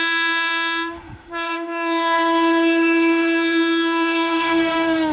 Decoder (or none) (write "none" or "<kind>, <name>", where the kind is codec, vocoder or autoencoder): autoencoder, DAC-VAE